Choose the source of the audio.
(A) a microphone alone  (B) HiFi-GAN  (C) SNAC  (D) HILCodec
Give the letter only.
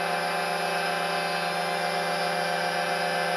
A